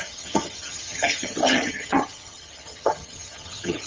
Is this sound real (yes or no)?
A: no